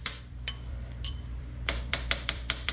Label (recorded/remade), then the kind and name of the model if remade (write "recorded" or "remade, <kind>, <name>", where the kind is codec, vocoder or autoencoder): remade, vocoder, BigVGAN v2